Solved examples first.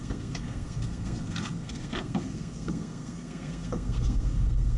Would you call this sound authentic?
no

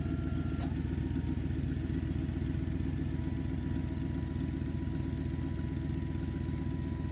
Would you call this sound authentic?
yes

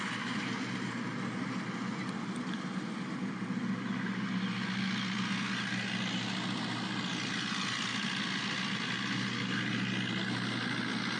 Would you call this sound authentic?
yes